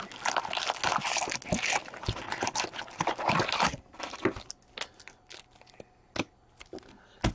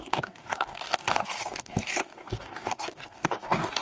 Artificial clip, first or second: second